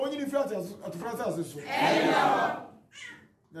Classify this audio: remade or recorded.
recorded